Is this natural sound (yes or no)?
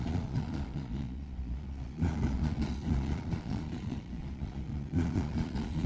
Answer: no